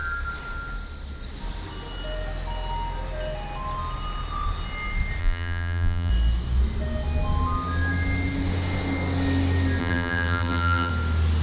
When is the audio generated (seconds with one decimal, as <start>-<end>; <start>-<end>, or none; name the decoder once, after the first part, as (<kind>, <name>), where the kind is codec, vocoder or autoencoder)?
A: 5.2-6.1 (vocoder, BigVGAN v2); 9.8-10.9